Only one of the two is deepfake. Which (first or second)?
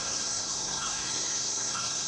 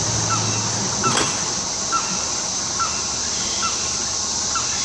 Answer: first